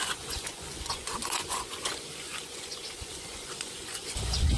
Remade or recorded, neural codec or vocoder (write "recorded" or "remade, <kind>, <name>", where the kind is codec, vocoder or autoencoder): remade, vocoder, Vocos